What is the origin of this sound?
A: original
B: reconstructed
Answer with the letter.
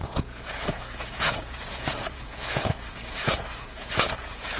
B